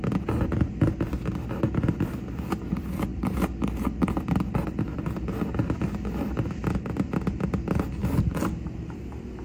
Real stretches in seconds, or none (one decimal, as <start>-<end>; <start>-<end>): 0.0-9.4